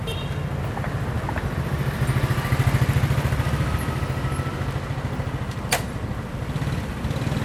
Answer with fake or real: real